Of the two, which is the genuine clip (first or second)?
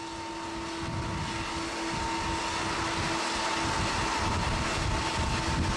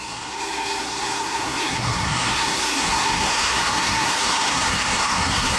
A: first